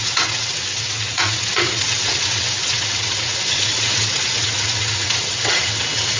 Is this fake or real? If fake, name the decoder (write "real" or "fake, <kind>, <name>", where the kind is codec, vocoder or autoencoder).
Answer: fake, vocoder, WaveNeXt